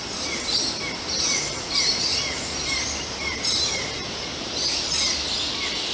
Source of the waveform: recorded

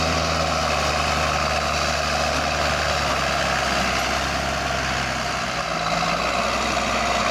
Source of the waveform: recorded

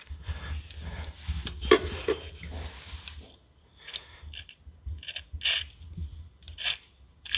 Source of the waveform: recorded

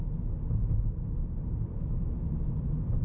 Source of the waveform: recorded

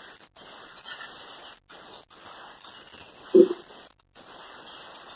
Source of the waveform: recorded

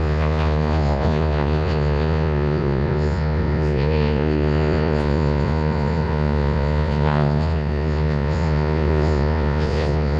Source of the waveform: remade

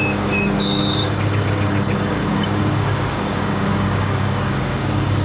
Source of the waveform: remade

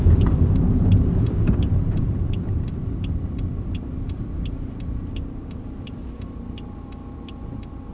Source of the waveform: remade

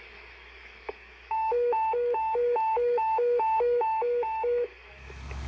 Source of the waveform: remade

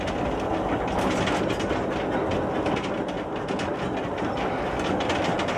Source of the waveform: recorded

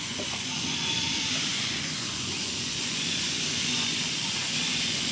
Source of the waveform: remade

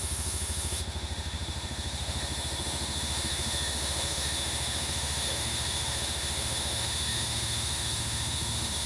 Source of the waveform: remade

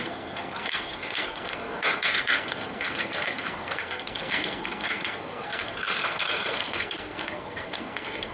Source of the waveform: remade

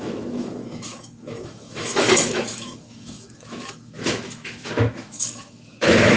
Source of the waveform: remade